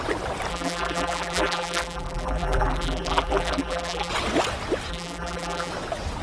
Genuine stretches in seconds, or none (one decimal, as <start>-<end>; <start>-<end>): 0.0-0.5; 4.1-4.9; 5.7-6.2